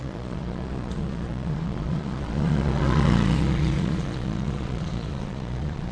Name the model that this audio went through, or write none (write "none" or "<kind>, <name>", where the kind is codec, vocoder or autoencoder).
vocoder, Vocos